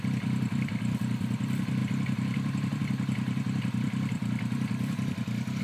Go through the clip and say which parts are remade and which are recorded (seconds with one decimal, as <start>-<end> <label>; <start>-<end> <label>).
0.0-5.6 remade